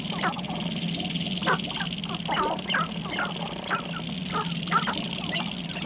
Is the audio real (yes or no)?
yes